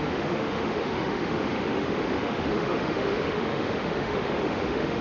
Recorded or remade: remade